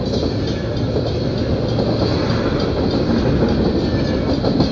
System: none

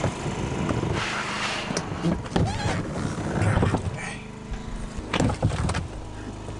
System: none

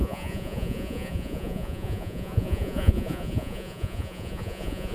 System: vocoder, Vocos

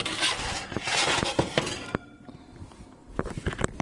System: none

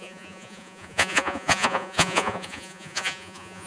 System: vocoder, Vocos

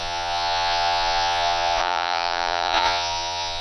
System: vocoder, Vocos